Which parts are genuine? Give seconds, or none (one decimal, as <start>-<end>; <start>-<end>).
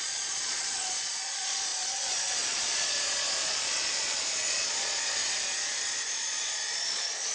5.2-5.8